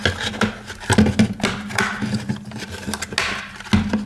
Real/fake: real